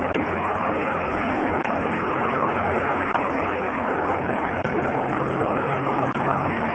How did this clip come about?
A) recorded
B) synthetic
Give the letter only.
B